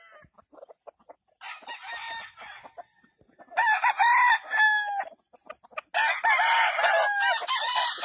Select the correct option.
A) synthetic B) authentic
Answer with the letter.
B